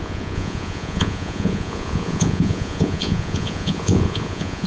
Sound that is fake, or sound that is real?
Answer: fake